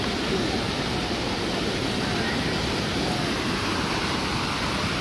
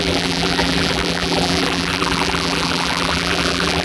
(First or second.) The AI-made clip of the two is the second